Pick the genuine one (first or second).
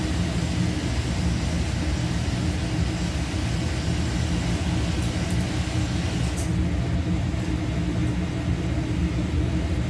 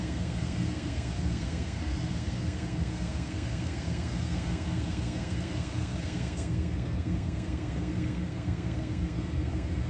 first